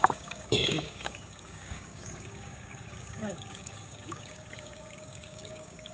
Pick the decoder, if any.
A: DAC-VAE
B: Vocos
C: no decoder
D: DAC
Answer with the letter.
D